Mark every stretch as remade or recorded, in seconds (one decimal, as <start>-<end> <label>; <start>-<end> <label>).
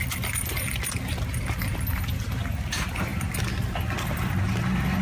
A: 0.0-5.0 recorded